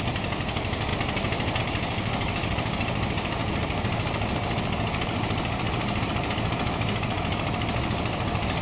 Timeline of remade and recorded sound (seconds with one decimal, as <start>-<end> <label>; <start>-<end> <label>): 0.0-0.9 remade; 0.9-1.6 recorded; 1.6-8.6 remade